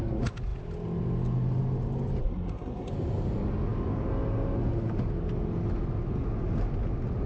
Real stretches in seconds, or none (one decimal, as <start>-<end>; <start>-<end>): 0.0-2.2; 2.9-7.3